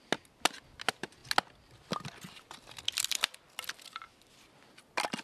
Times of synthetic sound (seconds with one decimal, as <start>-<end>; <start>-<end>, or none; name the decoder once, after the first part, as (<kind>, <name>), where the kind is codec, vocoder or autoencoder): none